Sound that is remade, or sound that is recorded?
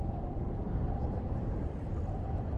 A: recorded